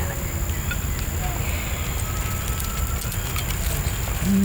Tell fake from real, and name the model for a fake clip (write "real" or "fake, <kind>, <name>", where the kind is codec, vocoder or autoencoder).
real